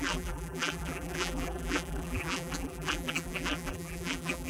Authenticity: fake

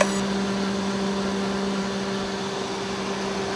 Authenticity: fake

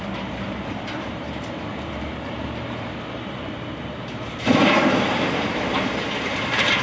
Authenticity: fake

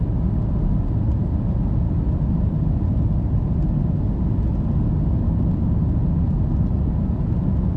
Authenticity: real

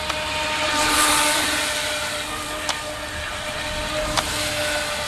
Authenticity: real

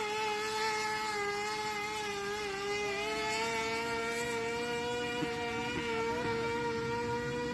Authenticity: real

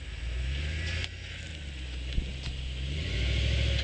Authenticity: real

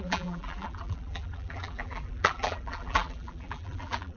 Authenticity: fake